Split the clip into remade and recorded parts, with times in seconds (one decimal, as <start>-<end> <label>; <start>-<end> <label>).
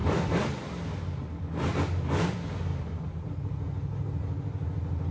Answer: 0.0-0.7 remade; 0.7-2.7 recorded; 2.7-3.3 remade; 3.3-5.1 recorded